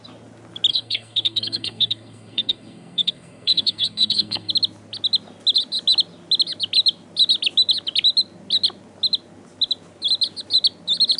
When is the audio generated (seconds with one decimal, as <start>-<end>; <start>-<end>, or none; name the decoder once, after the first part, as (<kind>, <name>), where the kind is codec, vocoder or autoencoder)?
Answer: 0.7-4.5 (codec, SNAC)